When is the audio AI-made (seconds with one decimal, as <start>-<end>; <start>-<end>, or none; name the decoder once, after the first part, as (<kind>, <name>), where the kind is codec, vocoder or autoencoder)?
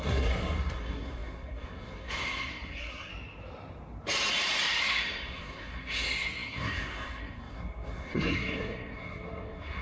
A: 0.0-3.1 (codec, SNAC); 4.8-9.8